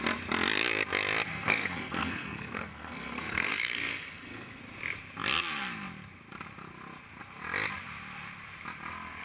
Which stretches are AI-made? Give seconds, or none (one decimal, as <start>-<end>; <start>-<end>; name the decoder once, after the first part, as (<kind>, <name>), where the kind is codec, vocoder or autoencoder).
1.3-4.6 (codec, SNAC)